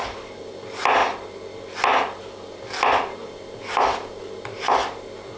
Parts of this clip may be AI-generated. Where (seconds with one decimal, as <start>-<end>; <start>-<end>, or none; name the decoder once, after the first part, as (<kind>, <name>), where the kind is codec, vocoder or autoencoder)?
none